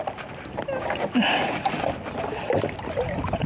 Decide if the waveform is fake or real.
real